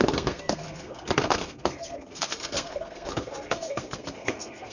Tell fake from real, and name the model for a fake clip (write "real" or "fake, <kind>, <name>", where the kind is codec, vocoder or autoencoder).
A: fake, codec, SNAC